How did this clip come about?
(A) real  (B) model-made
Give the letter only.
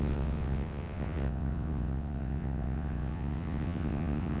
B